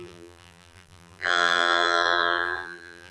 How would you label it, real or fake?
fake